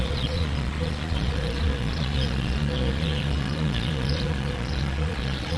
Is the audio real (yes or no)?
no